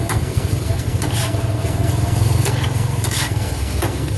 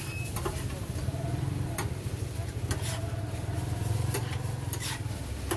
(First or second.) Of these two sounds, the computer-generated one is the first